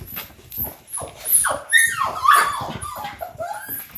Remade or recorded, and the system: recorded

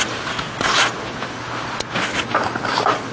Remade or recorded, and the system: recorded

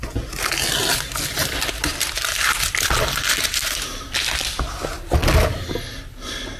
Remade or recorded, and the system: recorded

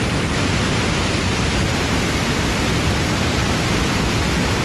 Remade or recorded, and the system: remade, vocoder, BigVGAN v2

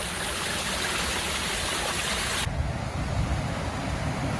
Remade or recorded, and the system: recorded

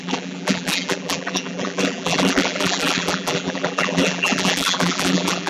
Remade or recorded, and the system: remade, vocoder, BigVGAN v2